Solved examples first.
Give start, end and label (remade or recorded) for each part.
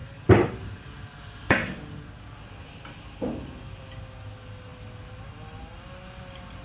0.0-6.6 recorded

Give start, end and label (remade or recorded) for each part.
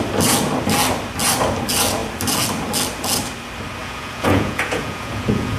0.0-3.8 recorded; 3.8-5.6 remade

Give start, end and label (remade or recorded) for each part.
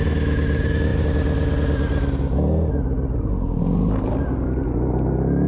0.0-5.5 recorded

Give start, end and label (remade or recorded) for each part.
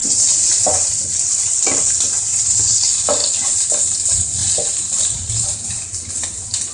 0.0-6.7 recorded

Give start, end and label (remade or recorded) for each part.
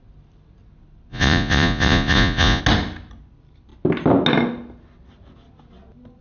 0.0-1.1 recorded; 1.1-2.6 remade; 2.6-6.2 recorded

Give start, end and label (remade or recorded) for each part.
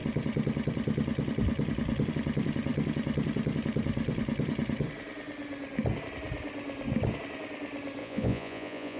0.0-8.0 recorded; 8.0-9.0 remade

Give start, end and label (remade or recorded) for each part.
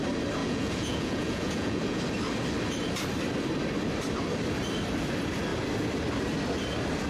0.0-0.4 recorded; 0.4-2.0 remade; 2.0-7.1 recorded